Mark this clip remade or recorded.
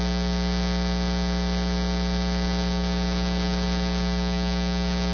recorded